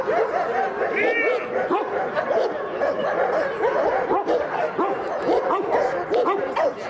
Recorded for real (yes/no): yes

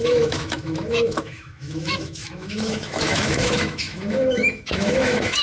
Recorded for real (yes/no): no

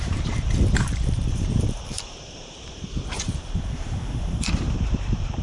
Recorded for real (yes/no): no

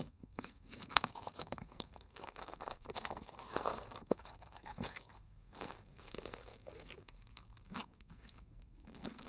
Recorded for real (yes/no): no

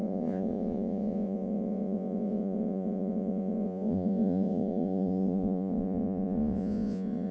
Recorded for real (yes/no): no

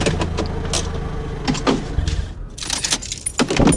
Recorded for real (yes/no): yes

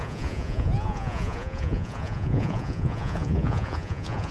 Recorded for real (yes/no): no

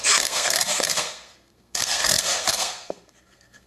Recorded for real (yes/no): no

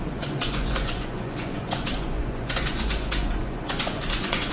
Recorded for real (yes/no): no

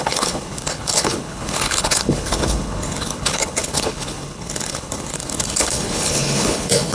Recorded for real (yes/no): no